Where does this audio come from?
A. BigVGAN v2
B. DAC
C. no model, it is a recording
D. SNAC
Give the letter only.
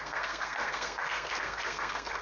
D